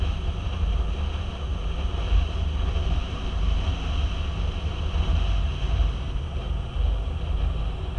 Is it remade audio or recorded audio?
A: recorded